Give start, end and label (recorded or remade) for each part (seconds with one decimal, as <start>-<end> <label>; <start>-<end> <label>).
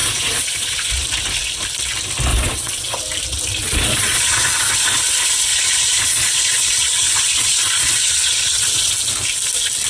0.0-0.9 remade; 0.9-2.3 recorded; 2.3-3.0 remade; 3.0-3.6 recorded; 3.6-4.7 remade; 4.7-5.5 recorded; 5.5-8.9 remade; 8.9-9.9 recorded